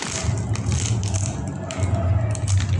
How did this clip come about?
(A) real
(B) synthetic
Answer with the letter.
A